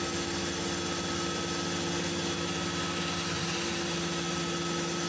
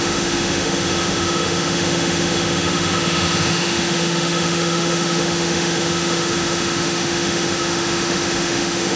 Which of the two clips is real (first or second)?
first